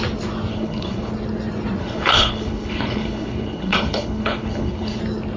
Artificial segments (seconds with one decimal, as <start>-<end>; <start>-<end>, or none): 0.5-1.1; 1.8-5.0